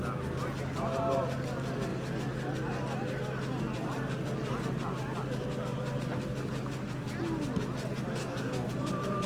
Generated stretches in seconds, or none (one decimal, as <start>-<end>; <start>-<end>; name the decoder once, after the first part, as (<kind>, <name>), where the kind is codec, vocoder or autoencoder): 8.2-8.7 (codec, DAC)